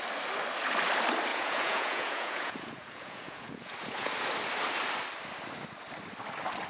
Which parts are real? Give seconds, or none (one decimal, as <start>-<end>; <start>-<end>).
0.0-1.3; 4.1-6.7